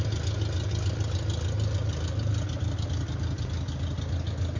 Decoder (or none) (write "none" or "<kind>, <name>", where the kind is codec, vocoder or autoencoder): none